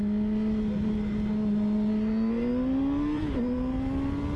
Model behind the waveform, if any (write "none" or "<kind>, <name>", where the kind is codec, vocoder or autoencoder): none